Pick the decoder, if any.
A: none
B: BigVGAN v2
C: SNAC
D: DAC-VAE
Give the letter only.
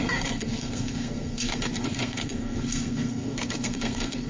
C